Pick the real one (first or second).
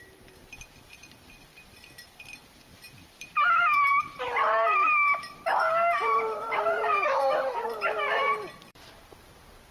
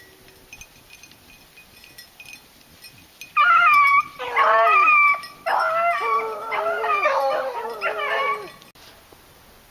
second